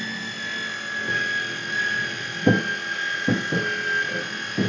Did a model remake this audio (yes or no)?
no